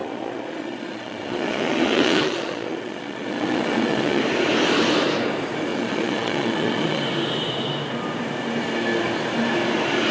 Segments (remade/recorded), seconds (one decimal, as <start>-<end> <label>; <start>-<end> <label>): 0.0-4.2 remade; 4.2-5.7 recorded; 5.7-7.0 remade; 7.0-10.1 recorded